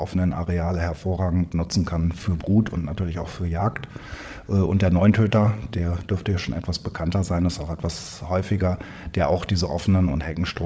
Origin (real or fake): fake